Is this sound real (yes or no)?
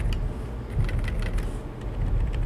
yes